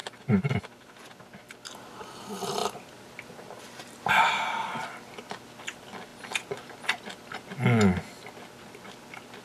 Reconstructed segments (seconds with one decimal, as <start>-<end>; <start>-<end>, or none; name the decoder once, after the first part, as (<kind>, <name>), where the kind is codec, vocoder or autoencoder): none